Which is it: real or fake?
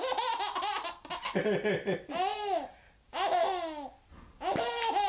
real